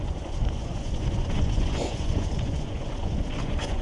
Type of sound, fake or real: fake